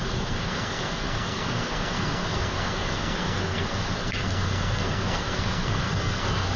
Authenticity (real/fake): fake